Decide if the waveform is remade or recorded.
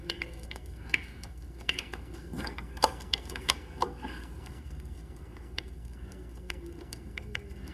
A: remade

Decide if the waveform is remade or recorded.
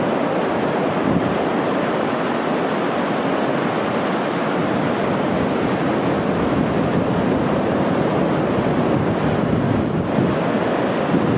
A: recorded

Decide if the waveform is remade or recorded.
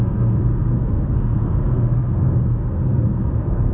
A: remade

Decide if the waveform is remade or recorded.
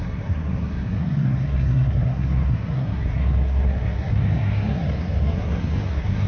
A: remade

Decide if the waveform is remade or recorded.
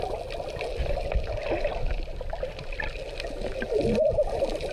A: recorded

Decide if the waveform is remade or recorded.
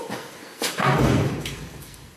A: remade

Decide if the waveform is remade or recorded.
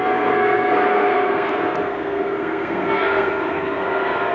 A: remade